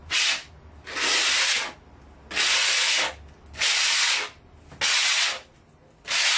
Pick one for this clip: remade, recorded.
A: recorded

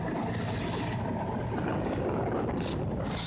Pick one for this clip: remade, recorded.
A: recorded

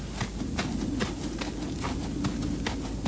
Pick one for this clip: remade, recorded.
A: recorded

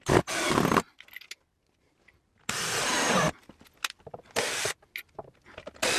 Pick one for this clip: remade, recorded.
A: recorded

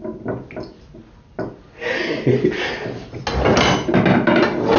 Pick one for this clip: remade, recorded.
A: recorded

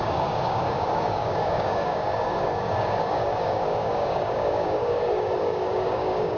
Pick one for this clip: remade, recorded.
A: remade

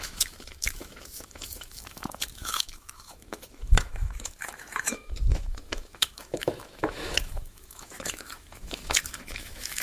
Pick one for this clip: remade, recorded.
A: remade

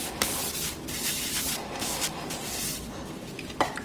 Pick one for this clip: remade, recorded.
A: remade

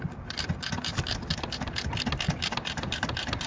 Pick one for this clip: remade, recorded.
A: recorded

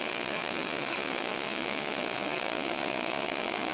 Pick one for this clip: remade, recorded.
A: remade